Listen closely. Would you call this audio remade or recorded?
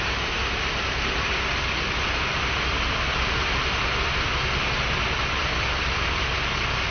recorded